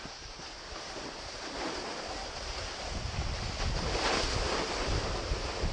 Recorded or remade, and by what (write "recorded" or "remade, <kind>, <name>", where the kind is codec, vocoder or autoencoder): recorded